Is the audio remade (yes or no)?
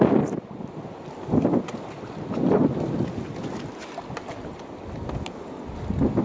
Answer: no